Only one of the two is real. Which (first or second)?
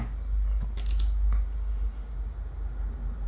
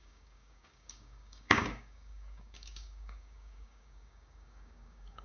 first